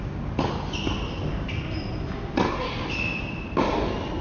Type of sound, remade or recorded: recorded